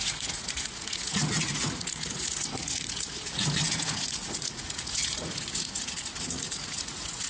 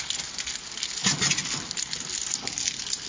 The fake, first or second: first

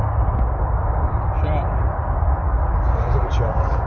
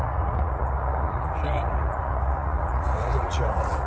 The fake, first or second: second